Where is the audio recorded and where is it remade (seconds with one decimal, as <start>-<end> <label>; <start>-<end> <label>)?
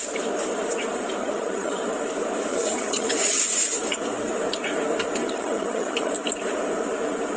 0.0-1.2 recorded; 1.2-1.8 remade; 1.8-2.5 recorded; 2.5-3.4 remade; 3.4-5.2 recorded; 5.2-6.1 remade; 6.1-7.4 recorded